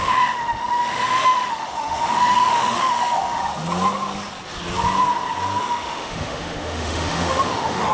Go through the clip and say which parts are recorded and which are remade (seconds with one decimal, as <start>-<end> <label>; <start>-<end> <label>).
0.0-3.4 remade; 3.4-5.6 recorded; 5.6-7.9 remade

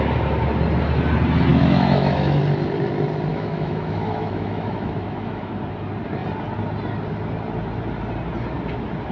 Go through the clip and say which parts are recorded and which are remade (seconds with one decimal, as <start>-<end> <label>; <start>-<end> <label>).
0.0-1.5 recorded; 1.5-2.4 remade; 2.4-3.3 recorded; 3.3-5.5 remade; 5.5-9.1 recorded

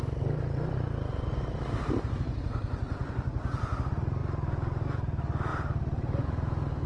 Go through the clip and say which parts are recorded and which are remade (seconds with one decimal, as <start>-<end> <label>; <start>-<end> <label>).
0.0-1.1 recorded; 1.1-2.2 remade; 2.2-3.0 recorded; 3.0-3.6 remade; 3.6-5.5 recorded; 5.5-6.2 remade; 6.2-6.9 recorded

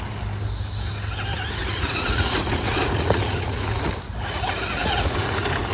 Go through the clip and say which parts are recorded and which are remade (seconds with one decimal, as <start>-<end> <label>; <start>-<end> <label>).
0.0-1.6 recorded; 1.6-3.9 remade; 3.9-4.8 recorded; 4.8-5.7 remade

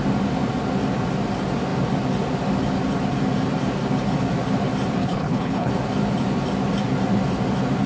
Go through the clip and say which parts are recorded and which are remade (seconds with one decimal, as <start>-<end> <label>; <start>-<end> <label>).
0.0-5.0 recorded; 5.0-5.7 remade; 5.7-7.9 recorded

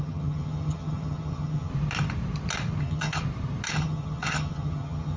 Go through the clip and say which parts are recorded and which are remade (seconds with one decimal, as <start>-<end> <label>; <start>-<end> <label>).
0.0-1.7 remade; 1.7-2.8 recorded; 2.8-3.2 remade; 3.2-3.7 recorded; 3.7-5.2 remade

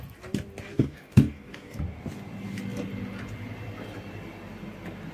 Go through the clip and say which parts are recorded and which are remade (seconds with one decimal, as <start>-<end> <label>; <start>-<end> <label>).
0.0-0.7 recorded; 0.7-1.8 remade; 1.8-5.1 recorded

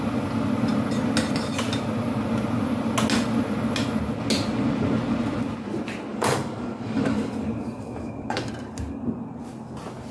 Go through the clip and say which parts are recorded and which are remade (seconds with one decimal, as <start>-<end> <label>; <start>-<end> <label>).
0.0-6.1 recorded; 6.1-8.5 remade; 8.5-10.1 recorded